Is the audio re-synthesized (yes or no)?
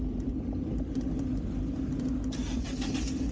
no